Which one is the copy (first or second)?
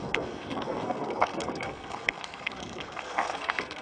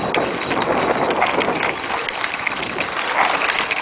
first